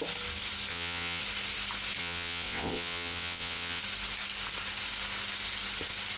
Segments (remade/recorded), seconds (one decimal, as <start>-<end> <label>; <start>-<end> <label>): 0.0-0.7 recorded; 0.7-1.2 remade; 1.2-2.0 recorded; 2.0-3.8 remade; 3.8-6.2 recorded